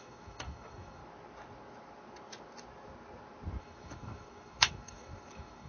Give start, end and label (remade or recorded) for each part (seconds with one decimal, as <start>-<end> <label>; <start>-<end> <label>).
0.0-1.0 remade; 1.0-3.6 recorded; 3.6-5.7 remade